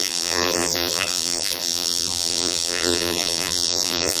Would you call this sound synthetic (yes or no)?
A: yes